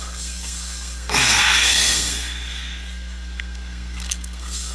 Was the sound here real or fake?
fake